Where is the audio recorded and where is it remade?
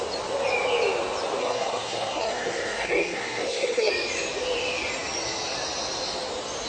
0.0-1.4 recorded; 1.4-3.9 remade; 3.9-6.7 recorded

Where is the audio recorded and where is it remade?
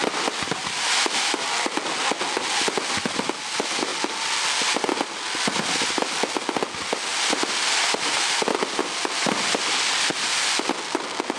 0.0-11.4 recorded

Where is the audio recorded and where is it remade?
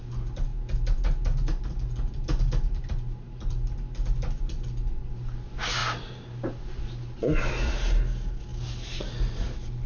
0.0-9.9 recorded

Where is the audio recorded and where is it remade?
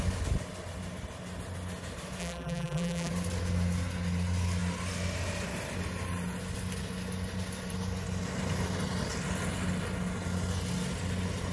0.0-2.2 recorded; 2.2-3.1 remade; 3.1-11.5 recorded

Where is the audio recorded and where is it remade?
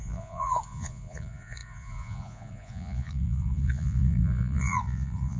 0.0-5.4 remade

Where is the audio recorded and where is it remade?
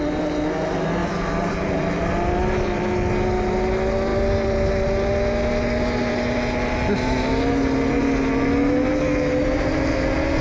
0.0-1.0 recorded; 1.0-2.1 remade; 2.1-10.4 recorded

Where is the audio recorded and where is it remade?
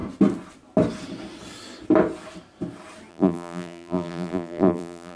0.0-3.1 recorded; 3.1-5.2 remade